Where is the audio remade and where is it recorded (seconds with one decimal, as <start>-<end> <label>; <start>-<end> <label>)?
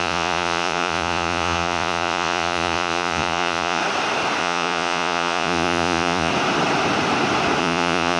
0.0-3.8 remade; 3.8-4.4 recorded; 4.4-6.3 remade; 6.3-7.6 recorded; 7.6-8.2 remade